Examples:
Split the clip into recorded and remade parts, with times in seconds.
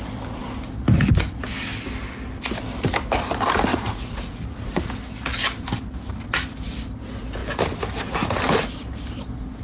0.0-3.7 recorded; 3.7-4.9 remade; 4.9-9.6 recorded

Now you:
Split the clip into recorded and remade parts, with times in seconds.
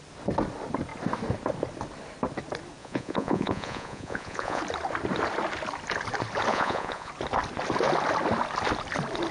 0.0-2.8 recorded; 2.8-4.6 remade; 4.6-6.5 recorded; 6.5-7.1 remade; 7.1-9.3 recorded